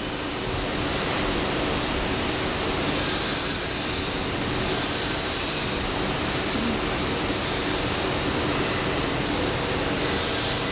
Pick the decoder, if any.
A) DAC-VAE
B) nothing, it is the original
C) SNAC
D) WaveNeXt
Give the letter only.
B